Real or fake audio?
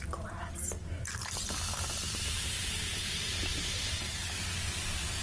real